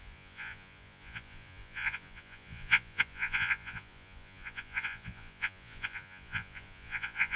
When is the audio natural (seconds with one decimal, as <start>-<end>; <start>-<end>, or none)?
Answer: none